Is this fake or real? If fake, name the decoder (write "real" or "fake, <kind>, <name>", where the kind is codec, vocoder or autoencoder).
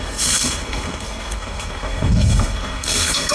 fake, codec, SNAC